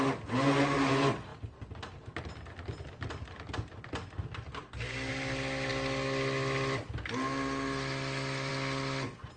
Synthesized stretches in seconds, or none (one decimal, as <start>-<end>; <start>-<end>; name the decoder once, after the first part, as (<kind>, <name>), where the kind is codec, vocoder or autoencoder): none

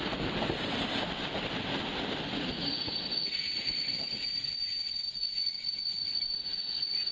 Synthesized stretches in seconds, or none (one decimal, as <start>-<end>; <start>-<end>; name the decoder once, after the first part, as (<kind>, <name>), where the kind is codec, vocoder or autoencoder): 2.3-3.7 (vocoder, Vocos); 5.2-7.1

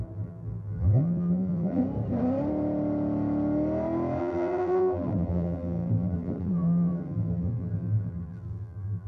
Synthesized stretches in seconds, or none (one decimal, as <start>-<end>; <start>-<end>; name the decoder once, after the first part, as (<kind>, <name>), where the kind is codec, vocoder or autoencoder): 0.0-1.8 (vocoder, BigVGAN v2); 4.2-9.1

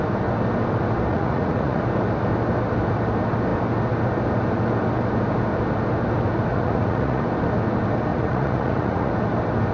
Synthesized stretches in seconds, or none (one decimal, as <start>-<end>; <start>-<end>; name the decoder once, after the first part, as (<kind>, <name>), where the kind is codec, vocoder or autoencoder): 1.1-1.8 (vocoder, Vocos); 6.5-7.2; 8.1-9.1